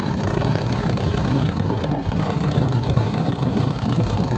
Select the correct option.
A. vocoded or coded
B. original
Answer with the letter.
A